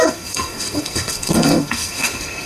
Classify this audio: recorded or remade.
remade